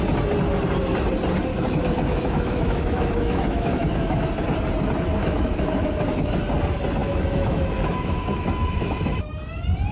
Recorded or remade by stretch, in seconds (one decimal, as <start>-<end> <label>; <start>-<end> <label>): 0.0-1.5 recorded; 1.5-4.3 remade; 4.3-5.2 recorded; 5.2-6.4 remade; 6.4-7.0 recorded; 7.0-9.2 remade; 9.2-9.9 recorded